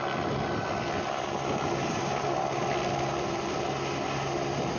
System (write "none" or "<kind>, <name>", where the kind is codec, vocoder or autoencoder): none